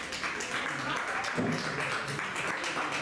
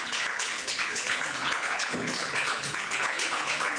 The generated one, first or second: second